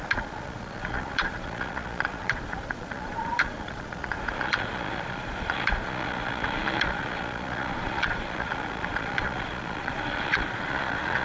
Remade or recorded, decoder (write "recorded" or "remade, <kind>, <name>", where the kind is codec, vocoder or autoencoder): remade, vocoder, Vocos